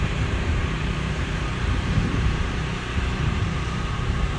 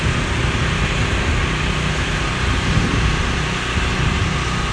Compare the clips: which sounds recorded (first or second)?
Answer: second